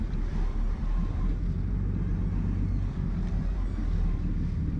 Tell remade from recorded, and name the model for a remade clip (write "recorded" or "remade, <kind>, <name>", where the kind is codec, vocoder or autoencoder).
recorded